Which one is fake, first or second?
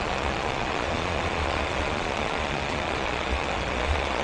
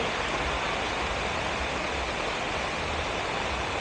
first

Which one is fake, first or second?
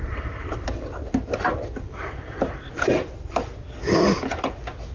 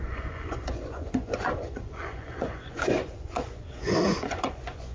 second